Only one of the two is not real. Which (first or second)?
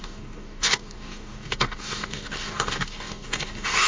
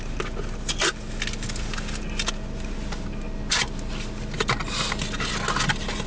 first